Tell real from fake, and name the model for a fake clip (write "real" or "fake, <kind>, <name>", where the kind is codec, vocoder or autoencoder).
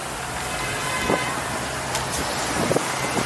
real